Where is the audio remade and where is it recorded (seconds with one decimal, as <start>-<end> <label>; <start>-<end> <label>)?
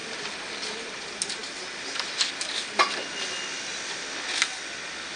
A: 0.0-0.9 remade; 0.9-5.2 recorded